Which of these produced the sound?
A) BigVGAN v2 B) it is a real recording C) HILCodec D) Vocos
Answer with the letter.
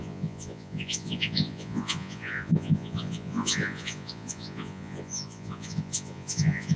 D